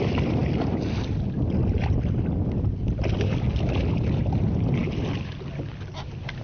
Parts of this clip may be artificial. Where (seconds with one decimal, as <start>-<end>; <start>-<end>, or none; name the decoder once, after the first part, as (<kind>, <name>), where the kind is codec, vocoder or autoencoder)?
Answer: none